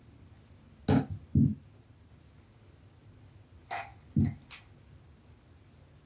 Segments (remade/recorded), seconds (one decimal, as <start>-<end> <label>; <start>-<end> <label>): 0.0-6.1 recorded